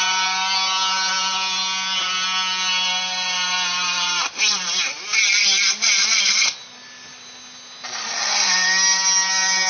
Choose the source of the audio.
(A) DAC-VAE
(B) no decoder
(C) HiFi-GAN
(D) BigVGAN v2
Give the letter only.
B